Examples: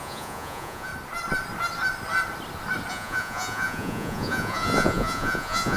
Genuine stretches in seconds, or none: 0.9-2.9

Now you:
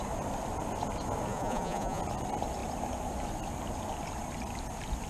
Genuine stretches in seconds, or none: 0.0-1.3; 2.0-5.1

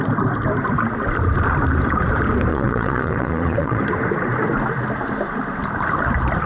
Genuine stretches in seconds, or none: 0.0-2.5; 3.8-6.5

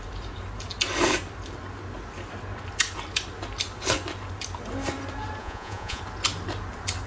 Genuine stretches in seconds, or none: 0.0-5.4; 6.0-7.1

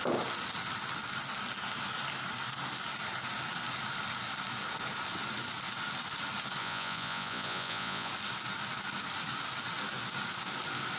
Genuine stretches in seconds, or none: 0.0-6.6; 8.1-11.0

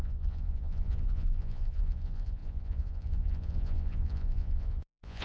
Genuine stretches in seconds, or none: none

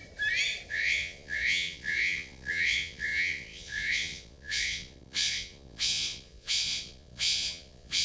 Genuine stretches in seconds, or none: 0.0-0.7